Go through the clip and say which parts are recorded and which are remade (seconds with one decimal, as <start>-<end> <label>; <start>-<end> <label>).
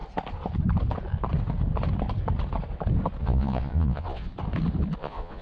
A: 0.0-3.2 recorded; 3.2-4.3 remade; 4.3-5.0 recorded; 5.0-5.4 remade